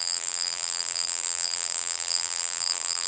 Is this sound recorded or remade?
remade